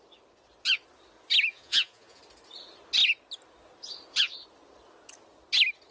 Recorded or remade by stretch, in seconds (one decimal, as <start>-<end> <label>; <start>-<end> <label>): 0.0-1.5 recorded; 1.5-2.2 remade; 2.2-5.9 recorded